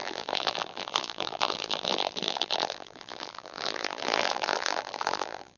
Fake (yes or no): yes